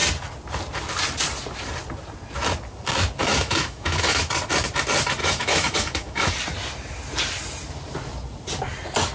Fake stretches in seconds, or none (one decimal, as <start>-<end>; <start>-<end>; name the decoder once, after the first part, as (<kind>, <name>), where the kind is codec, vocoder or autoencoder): 3.2-4.3 (autoencoder, DAC-VAE); 5.2-6.3